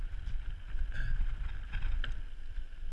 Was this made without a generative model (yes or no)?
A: yes